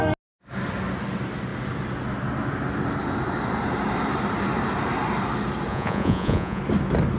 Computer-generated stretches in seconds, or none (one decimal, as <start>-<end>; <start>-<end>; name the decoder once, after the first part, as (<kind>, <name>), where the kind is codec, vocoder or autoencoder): 5.7-6.6 (vocoder, Vocos)